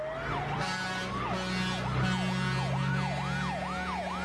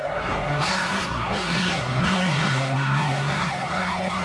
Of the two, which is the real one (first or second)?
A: first